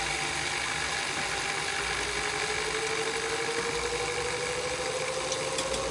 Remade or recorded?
recorded